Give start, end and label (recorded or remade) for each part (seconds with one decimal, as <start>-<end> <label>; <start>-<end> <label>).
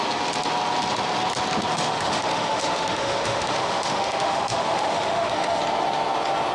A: 0.0-1.7 recorded; 1.7-5.6 remade; 5.6-6.5 recorded